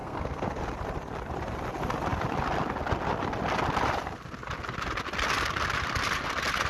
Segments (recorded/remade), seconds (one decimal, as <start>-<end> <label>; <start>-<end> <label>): 0.0-0.6 remade; 0.6-6.7 recorded